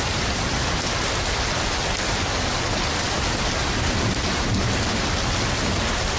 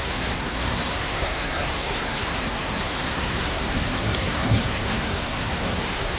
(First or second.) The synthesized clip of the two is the second